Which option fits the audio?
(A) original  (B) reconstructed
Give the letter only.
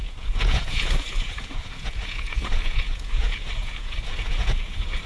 B